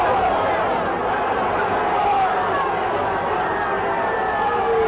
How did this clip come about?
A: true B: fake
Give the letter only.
A